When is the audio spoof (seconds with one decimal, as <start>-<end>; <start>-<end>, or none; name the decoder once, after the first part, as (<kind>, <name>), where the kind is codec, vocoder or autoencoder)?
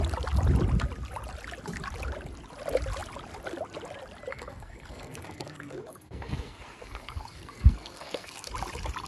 4.3-8.5 (codec, SNAC)